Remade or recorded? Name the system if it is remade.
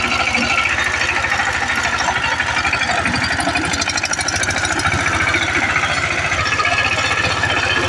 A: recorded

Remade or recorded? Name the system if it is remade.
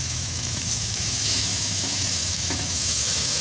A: remade, autoencoder, DAC-VAE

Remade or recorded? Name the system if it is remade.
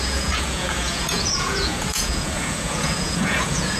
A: remade, vocoder, Vocos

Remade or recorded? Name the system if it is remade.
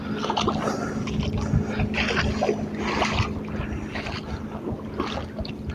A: recorded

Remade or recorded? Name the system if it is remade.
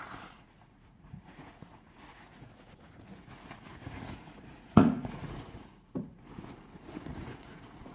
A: remade, vocoder, Vocos